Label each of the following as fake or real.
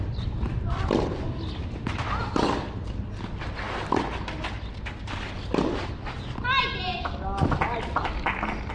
real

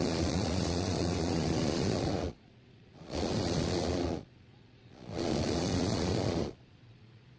fake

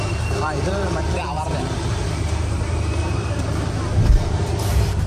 fake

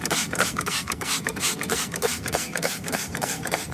fake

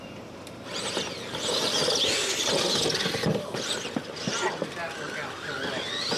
real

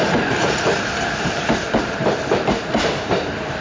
fake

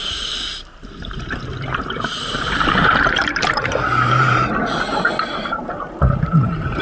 fake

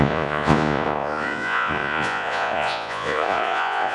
fake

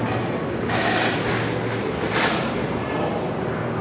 real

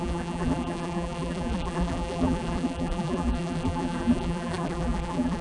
fake